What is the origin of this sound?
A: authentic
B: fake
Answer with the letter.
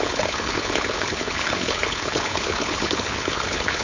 B